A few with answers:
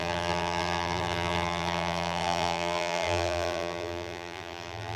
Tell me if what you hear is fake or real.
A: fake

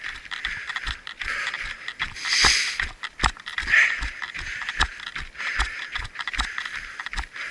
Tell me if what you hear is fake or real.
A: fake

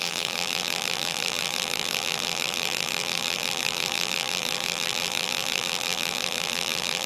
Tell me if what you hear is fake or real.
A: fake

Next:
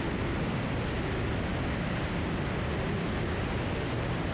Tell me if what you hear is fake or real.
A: real